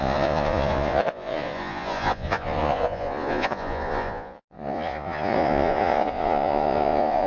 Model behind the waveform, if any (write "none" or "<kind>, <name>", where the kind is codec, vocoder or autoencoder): vocoder, Vocos